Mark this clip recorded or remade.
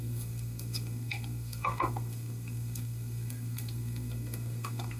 remade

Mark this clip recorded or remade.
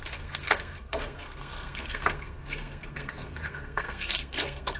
remade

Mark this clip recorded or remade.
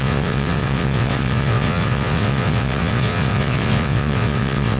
remade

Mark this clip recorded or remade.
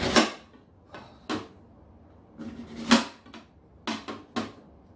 recorded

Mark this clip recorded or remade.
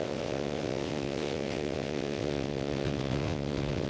remade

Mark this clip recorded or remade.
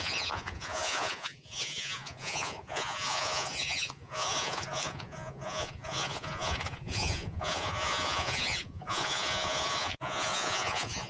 remade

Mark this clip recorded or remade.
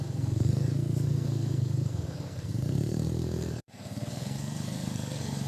remade